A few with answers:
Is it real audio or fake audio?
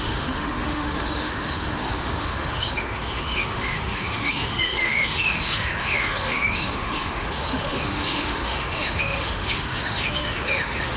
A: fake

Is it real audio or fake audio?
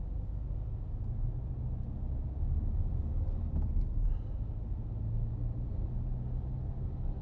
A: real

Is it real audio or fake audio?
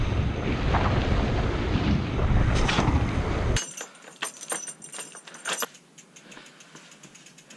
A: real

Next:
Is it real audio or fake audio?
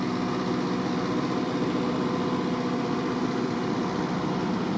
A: real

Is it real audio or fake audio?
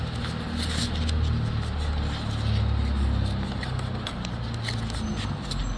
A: real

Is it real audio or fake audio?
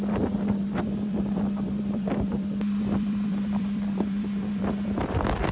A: fake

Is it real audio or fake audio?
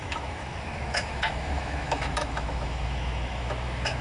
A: fake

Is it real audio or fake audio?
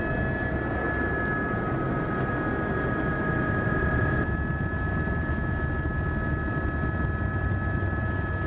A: real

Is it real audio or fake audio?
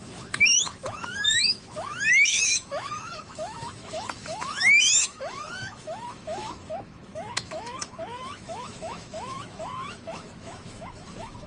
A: fake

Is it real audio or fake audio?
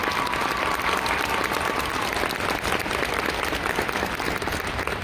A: real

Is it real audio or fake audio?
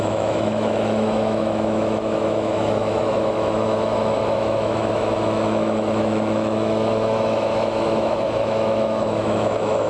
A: fake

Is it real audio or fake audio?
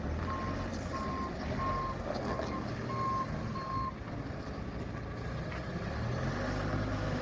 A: real